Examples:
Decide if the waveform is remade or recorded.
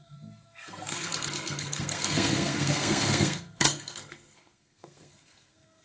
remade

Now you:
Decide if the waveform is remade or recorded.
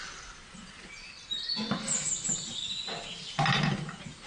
recorded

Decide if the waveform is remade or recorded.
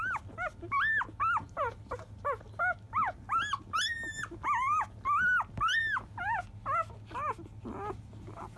recorded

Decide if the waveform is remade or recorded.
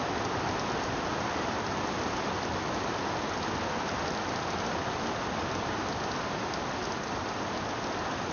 recorded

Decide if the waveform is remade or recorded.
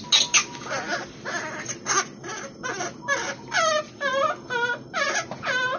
recorded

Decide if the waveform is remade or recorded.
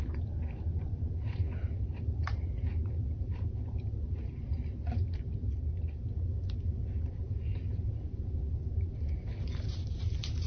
recorded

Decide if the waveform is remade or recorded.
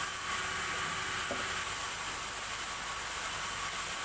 recorded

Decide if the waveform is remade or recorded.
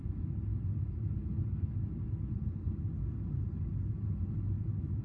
recorded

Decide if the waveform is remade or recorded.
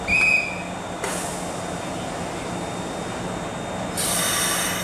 recorded